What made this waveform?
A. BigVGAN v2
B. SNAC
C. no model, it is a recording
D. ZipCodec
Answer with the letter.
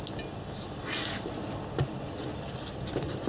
C